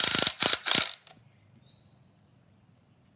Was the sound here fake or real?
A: fake